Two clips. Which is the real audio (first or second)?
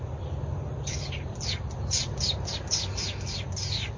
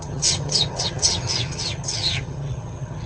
first